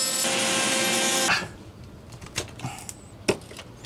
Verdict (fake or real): real